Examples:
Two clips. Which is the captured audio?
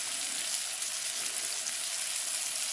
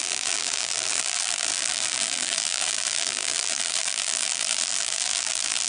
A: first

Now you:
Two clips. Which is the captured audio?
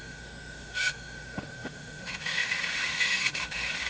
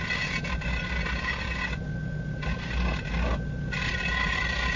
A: second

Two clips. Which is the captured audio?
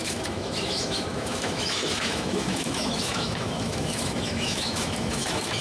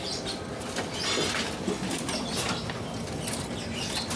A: second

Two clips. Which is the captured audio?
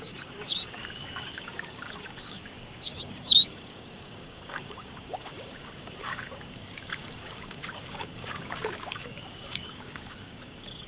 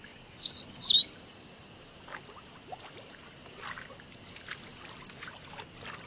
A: second